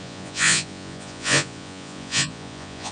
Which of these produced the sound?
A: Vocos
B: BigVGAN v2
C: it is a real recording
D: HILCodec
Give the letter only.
A